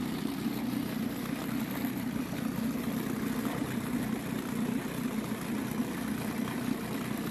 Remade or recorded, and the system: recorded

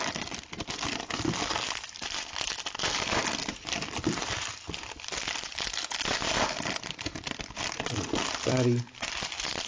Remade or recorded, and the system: remade, vocoder, BigVGAN v2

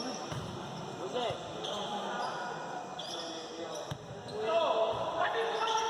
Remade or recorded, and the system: recorded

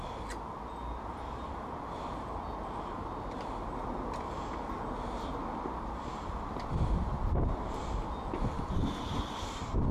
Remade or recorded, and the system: recorded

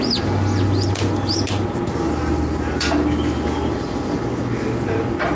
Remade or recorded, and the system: recorded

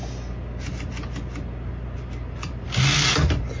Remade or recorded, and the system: recorded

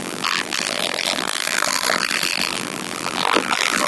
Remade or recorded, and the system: remade, vocoder, BigVGAN v2